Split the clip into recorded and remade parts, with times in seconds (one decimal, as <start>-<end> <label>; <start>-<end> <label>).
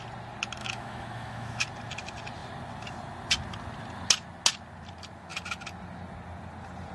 0.0-0.6 recorded; 0.6-1.6 remade; 1.6-6.9 recorded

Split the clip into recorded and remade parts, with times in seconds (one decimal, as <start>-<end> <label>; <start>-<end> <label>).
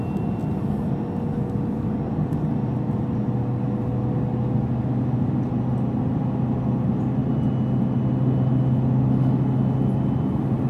0.0-10.7 recorded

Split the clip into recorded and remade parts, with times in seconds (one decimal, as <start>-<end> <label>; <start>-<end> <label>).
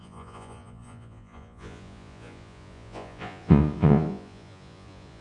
0.0-5.2 remade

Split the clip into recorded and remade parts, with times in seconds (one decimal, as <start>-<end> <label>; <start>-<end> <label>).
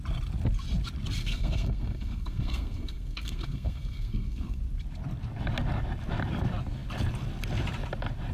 0.0-1.2 recorded; 1.2-4.6 remade; 4.6-8.3 recorded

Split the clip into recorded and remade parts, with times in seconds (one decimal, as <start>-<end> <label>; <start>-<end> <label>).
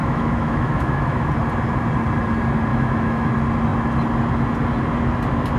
0.0-1.3 remade; 1.3-2.7 recorded; 2.7-3.3 remade; 3.3-5.6 recorded